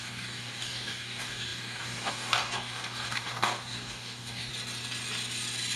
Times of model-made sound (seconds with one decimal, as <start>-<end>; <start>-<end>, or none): 0.0-4.5